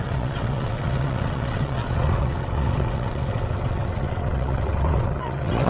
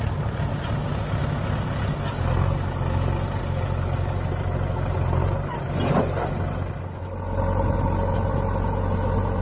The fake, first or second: first